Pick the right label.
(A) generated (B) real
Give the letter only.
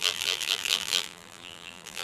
A